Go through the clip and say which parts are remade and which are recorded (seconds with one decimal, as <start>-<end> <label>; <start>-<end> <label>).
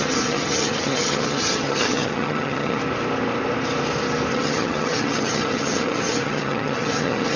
0.0-2.8 remade; 2.8-4.3 recorded; 4.3-7.4 remade